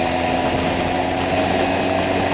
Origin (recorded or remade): recorded